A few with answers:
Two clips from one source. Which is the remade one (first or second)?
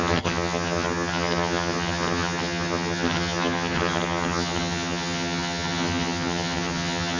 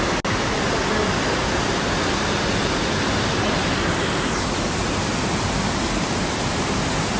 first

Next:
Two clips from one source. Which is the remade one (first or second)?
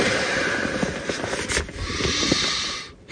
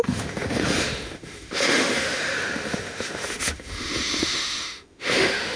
second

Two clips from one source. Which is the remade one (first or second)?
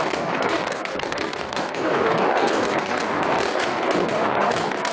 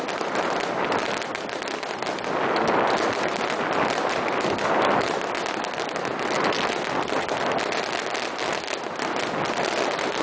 first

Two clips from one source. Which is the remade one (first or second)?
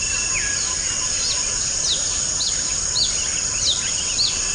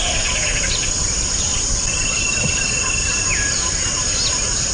second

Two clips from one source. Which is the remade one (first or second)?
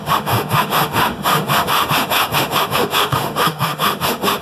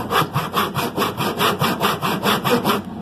first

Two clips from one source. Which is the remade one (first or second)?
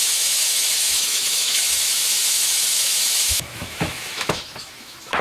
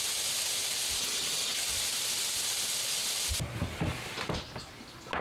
first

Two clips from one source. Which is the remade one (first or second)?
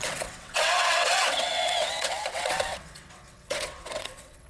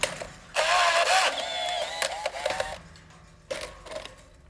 first